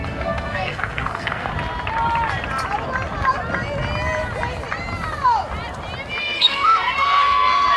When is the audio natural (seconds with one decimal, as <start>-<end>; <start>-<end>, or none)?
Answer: 1.5-6.2